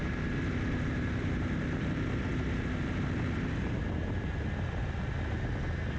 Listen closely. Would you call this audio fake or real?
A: real